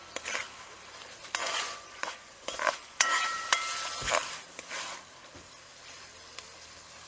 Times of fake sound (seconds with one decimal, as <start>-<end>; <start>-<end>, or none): 1.4-3.6